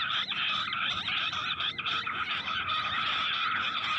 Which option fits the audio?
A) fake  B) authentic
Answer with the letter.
B